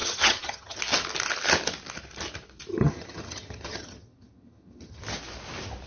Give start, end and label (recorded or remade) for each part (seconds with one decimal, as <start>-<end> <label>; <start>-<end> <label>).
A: 0.0-0.8 remade; 0.8-2.7 recorded; 2.7-5.0 remade; 5.0-5.9 recorded